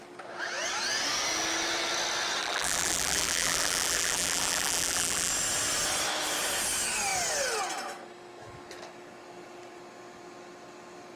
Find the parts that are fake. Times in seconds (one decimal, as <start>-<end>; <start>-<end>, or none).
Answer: 2.4-5.3